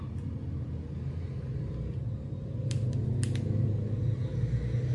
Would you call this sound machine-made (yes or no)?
no